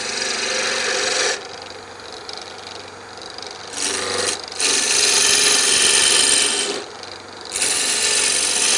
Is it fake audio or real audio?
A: real